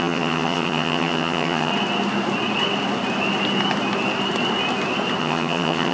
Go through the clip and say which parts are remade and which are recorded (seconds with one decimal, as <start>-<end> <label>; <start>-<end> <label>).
0.0-1.7 remade; 1.7-5.2 recorded; 5.2-5.9 remade